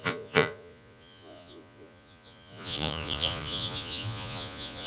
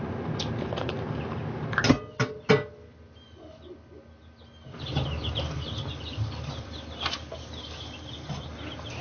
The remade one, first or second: first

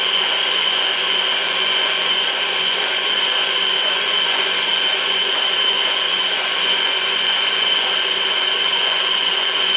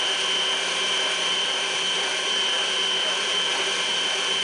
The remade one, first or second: first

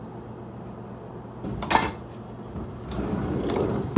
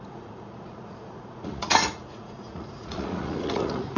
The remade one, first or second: second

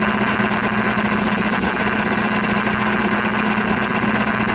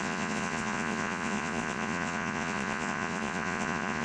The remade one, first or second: second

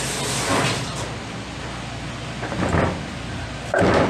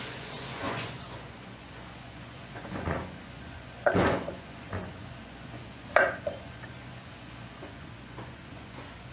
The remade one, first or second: second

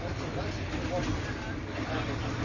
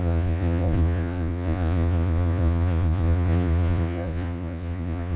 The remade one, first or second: second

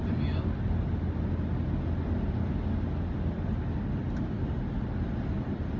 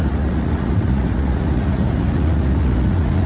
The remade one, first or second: second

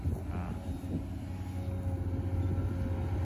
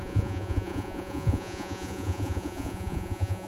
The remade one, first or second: second